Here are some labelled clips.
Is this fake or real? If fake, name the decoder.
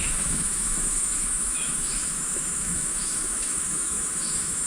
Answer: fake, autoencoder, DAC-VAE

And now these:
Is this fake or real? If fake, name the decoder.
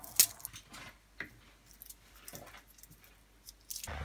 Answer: real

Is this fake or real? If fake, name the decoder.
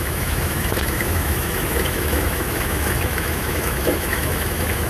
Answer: fake, autoencoder, DAC-VAE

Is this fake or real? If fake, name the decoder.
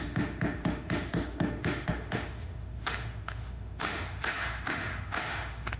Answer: fake, autoencoder, DAC-VAE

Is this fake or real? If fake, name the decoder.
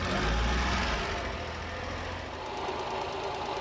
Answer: real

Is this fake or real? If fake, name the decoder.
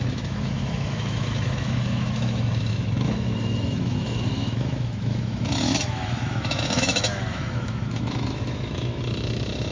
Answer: fake, autoencoder, DAC-VAE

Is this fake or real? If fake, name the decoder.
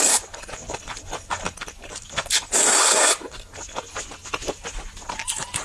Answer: real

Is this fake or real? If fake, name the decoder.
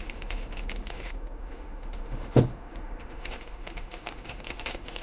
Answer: fake, autoencoder, DAC-VAE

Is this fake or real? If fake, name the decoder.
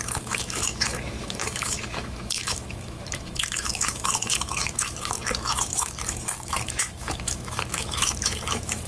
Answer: fake, autoencoder, DAC-VAE